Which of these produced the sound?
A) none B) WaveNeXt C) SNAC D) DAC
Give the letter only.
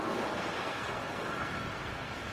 C